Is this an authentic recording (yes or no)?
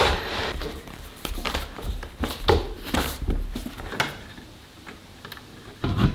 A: no